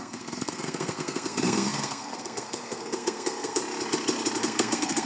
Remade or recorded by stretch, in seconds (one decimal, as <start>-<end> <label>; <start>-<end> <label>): 0.0-3.6 remade; 3.6-4.4 recorded; 4.4-5.1 remade